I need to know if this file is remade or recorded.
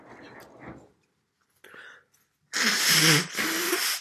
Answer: recorded